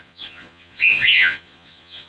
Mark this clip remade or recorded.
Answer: remade